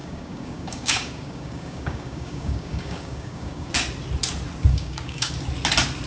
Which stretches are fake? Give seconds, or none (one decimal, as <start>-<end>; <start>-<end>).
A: 0.0-3.7; 4.7-5.3